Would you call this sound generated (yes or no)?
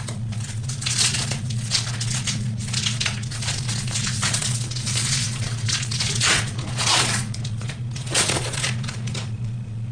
yes